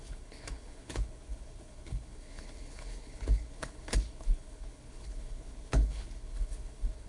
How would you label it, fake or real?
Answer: fake